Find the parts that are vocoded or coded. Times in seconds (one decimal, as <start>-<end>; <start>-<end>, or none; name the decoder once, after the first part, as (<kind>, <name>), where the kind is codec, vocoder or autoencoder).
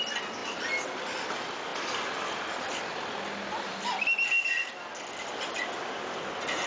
none